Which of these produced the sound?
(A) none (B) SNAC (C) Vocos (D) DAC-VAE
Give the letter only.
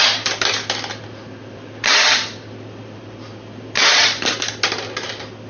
A